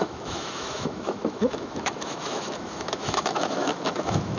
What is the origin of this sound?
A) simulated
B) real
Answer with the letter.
A